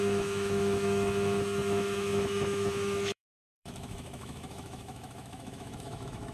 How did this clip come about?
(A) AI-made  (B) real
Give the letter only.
A